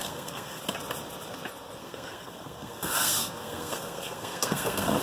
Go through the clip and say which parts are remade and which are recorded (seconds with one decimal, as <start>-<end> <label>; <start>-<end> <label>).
0.0-0.6 remade; 0.6-1.8 recorded; 1.8-5.0 remade